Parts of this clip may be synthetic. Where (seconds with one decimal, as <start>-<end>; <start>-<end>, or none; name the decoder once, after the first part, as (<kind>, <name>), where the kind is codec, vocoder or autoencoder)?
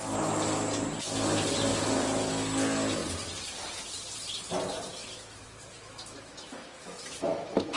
4.9-7.8 (autoencoder, DAC-VAE)